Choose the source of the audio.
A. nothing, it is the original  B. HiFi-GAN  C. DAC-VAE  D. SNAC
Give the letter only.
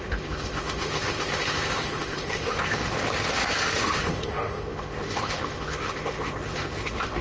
C